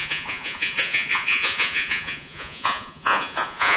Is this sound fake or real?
fake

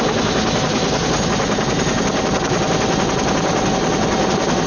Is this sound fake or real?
real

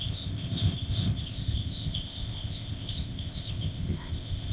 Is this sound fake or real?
fake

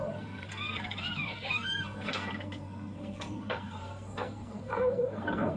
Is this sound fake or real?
fake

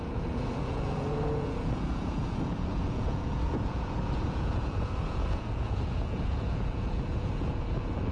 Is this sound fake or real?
fake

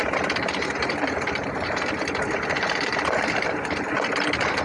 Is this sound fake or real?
fake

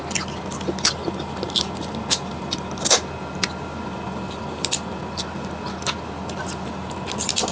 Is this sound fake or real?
real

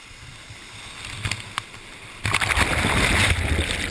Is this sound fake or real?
real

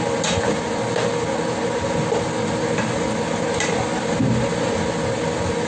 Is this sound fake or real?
real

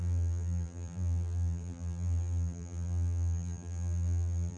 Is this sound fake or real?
fake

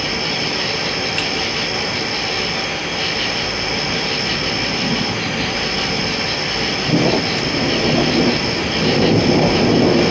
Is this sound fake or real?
real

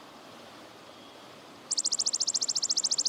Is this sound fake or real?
real